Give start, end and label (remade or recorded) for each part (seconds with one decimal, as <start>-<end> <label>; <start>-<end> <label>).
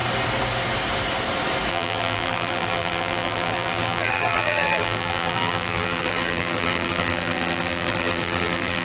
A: 0.0-1.7 recorded; 1.7-8.8 remade